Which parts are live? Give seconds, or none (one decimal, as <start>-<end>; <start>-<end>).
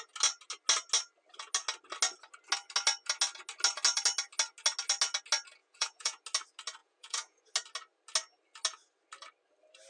0.0-5.6; 6.2-6.8; 7.4-9.9